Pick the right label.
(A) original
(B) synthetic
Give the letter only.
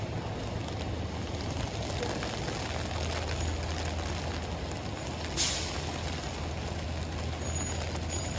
A